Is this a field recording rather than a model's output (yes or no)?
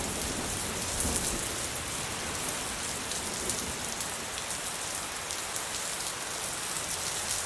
no